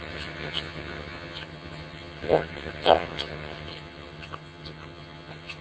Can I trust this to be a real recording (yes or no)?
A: no